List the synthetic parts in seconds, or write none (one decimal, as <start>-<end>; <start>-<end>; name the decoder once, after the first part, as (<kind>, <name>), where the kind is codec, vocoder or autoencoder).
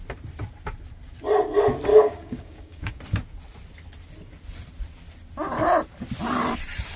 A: 1.9-3.0 (codec, DAC)